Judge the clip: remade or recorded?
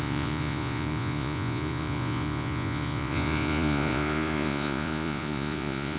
remade